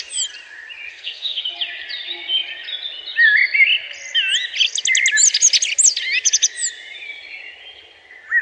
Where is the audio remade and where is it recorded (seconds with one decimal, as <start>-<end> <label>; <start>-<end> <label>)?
0.0-0.9 recorded; 0.9-1.4 remade; 1.4-8.4 recorded